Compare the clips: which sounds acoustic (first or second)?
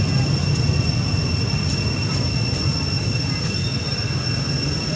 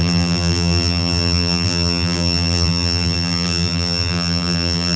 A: first